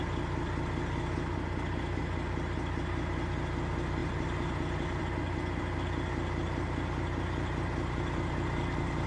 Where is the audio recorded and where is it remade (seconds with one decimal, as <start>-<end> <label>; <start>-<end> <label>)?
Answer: 0.0-9.1 recorded